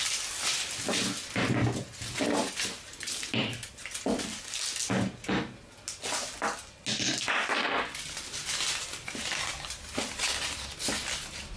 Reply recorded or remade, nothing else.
recorded